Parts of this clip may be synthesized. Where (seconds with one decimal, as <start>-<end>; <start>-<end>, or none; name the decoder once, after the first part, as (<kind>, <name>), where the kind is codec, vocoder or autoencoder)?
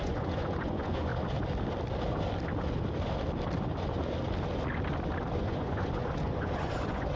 0.0-1.1 (vocoder, Vocos); 5.4-7.2